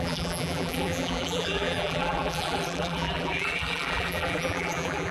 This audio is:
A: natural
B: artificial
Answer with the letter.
B